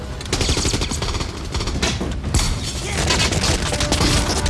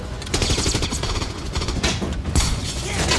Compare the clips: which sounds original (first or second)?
first